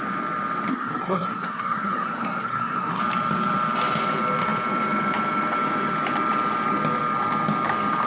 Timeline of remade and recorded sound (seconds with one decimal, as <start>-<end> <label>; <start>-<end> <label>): 0.0-0.7 recorded; 0.7-3.0 remade; 3.0-8.1 recorded